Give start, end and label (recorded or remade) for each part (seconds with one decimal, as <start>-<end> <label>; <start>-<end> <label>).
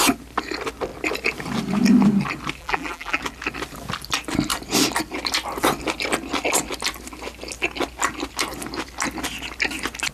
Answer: 0.0-2.6 recorded; 2.6-3.2 remade; 3.2-10.1 recorded